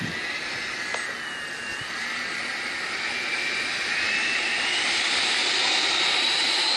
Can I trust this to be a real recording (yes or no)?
yes